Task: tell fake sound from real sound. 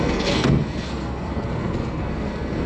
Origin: fake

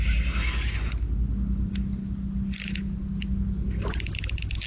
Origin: real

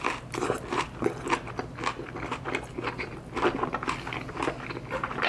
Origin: real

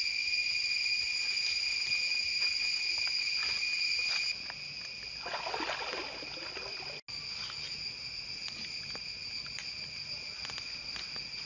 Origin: real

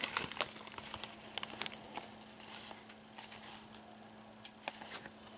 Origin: real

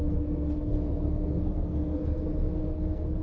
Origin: fake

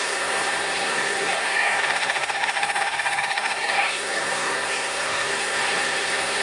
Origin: fake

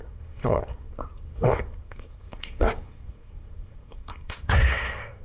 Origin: fake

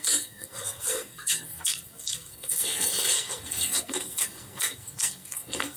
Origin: fake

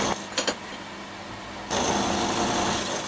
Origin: real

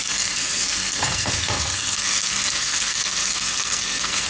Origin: fake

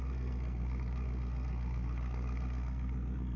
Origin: fake